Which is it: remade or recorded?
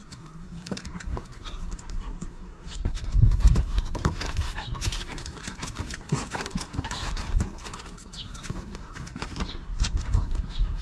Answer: remade